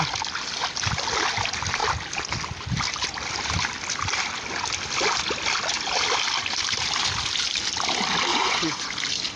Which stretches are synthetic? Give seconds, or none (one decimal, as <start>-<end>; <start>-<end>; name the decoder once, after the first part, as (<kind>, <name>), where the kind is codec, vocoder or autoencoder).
8.3-8.9 (vocoder, Vocos)